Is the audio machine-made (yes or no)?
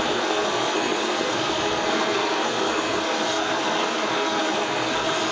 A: yes